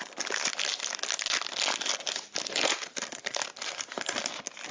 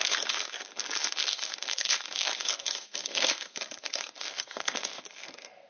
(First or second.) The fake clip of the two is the second